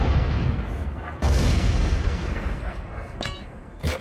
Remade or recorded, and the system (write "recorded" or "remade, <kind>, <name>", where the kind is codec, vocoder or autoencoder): remade, codec, SNAC